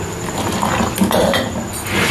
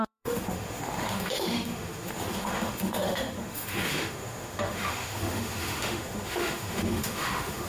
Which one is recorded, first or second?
first